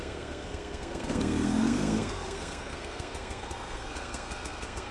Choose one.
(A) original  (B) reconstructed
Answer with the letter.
B